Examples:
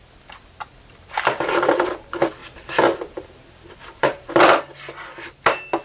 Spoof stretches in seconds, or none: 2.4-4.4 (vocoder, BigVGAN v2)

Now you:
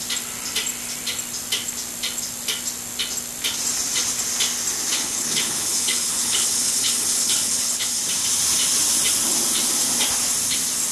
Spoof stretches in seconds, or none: 4.9-8.0 (codec, HILCodec)

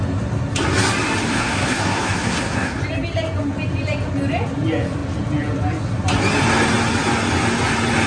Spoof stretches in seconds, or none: 1.3-2.8 (codec, SNAC)

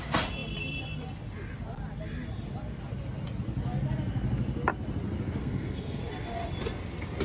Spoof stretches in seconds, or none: 5.4-6.0 (codec, SNAC)

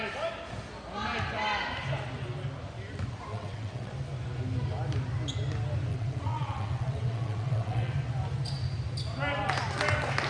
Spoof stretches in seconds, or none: 3.3-3.9 (vocoder, WaveNeXt); 5.9-7.9

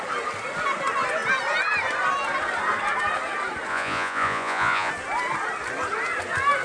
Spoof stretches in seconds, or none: 3.7-4.9 (vocoder, Vocos)

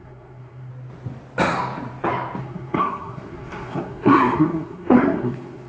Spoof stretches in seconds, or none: 0.0-0.7 (codec, SNAC); 2.4-5.7

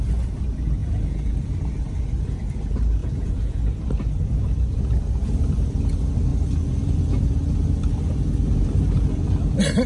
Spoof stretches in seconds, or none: 0.8-1.5 (vocoder, Vocos); 3.0-3.6